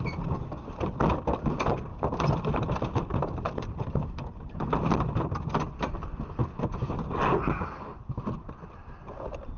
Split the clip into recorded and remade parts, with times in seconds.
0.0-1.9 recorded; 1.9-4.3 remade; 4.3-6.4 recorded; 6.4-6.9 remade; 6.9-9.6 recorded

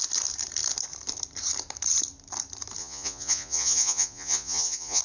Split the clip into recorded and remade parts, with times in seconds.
0.0-2.8 recorded; 2.8-5.0 remade